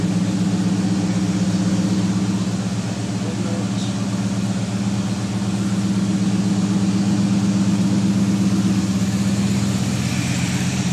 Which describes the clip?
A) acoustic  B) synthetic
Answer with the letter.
A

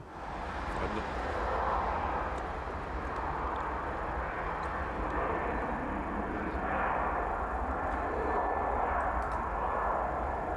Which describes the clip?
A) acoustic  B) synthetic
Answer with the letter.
A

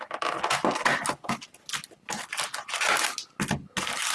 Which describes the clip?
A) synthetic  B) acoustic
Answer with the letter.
B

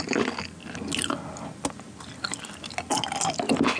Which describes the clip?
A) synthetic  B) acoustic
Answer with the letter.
B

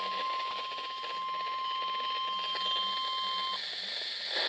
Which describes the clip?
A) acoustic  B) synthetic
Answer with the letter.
A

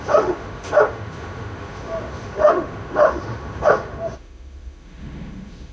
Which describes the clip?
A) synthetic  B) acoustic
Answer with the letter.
A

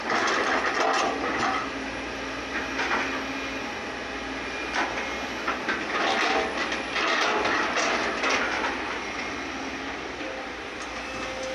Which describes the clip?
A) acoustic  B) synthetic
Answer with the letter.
A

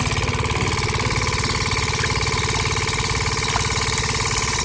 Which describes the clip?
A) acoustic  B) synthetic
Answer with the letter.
A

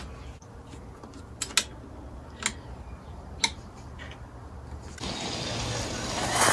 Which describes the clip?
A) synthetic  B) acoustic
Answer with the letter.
B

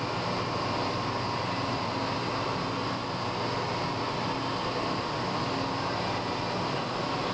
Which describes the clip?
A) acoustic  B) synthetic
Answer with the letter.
A